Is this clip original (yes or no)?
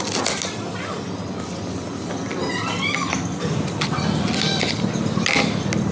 yes